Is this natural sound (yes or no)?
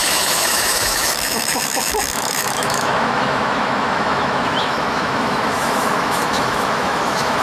no